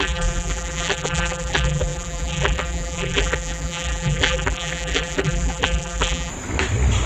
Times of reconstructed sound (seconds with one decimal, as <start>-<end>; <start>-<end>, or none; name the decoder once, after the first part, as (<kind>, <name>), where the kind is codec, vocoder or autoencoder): 0.0-6.3 (vocoder, BigVGAN v2)